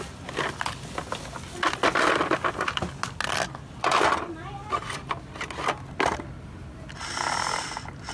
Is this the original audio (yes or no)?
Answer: yes